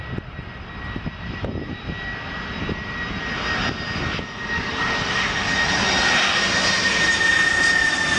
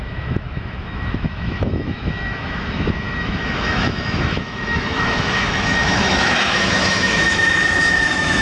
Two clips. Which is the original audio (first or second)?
first